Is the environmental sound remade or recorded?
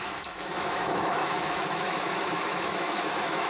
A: remade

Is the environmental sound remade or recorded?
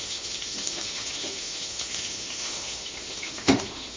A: remade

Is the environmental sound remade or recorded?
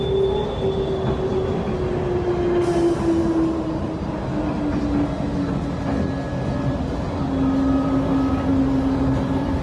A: recorded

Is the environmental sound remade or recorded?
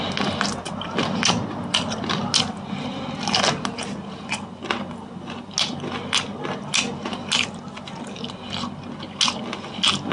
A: recorded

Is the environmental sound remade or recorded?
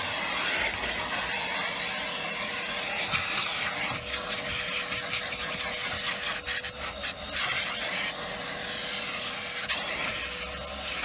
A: recorded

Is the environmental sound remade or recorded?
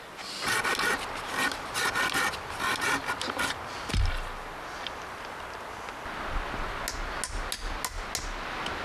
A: recorded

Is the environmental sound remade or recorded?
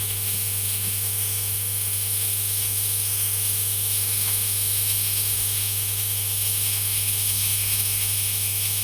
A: remade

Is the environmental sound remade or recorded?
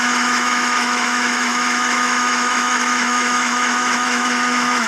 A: remade